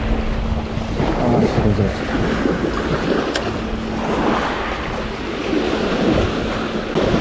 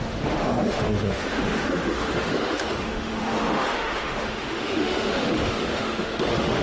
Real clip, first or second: first